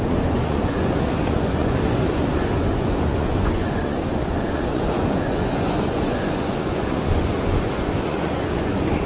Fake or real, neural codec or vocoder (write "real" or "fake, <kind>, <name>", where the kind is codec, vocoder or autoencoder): fake, vocoder, Vocos